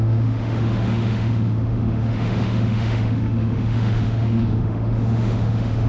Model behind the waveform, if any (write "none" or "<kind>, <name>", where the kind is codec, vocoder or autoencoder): autoencoder, DAC-VAE